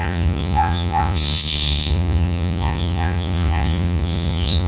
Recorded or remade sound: remade